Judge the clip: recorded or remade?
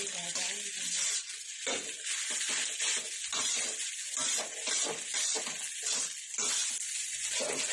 recorded